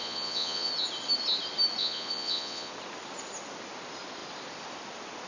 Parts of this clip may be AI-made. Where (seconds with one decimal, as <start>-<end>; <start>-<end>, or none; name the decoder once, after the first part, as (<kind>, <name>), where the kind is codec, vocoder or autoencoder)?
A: 0.0-0.7 (vocoder, Vocos); 1.8-2.7